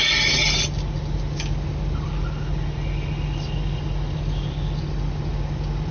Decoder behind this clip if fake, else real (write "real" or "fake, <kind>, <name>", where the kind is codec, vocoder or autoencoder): real